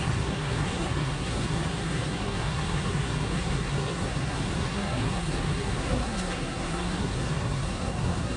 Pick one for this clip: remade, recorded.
remade